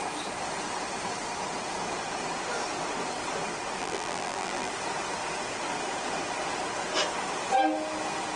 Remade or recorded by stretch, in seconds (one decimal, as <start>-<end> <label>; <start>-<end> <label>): 0.0-3.8 recorded; 3.8-4.7 remade; 4.7-8.4 recorded